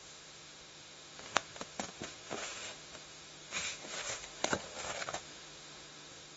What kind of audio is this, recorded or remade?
remade